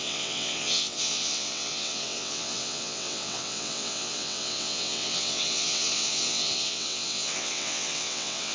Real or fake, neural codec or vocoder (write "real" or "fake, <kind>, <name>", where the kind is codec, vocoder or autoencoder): fake, vocoder, WaveNeXt